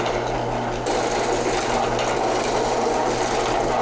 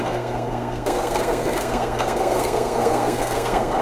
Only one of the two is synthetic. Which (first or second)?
second